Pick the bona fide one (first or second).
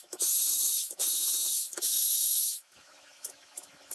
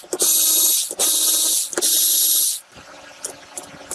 second